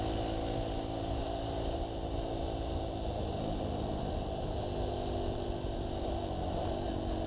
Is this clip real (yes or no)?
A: yes